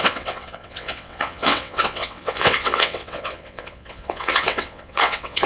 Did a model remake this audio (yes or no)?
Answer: yes